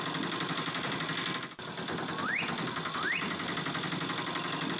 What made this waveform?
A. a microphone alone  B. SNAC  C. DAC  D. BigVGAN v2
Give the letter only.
A